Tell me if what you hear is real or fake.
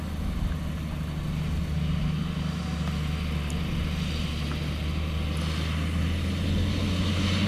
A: real